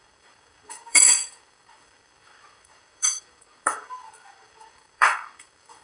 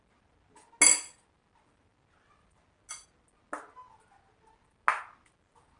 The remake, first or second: first